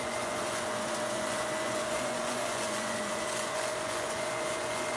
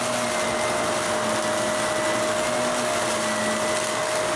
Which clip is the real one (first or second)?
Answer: second